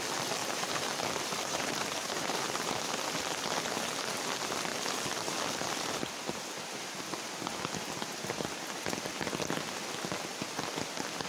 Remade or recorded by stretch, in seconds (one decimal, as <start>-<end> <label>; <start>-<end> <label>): 0.0-0.4 recorded; 0.4-2.8 remade; 2.8-11.3 recorded